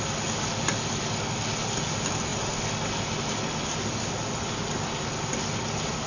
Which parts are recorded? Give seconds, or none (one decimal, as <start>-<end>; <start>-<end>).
0.0-6.1